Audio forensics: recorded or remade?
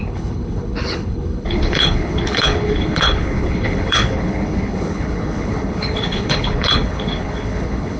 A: remade